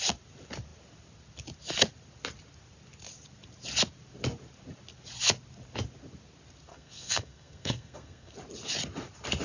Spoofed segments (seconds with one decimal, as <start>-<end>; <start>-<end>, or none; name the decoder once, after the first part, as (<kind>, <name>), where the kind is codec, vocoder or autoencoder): 6.7-8.3 (codec, SNAC)